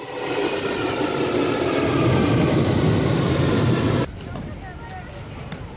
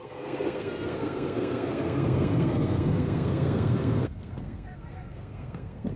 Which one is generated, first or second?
second